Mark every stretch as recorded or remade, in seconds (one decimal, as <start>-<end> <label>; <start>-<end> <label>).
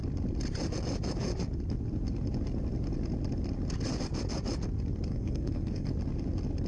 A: 0.0-5.1 recorded; 5.1-5.9 remade; 5.9-6.7 recorded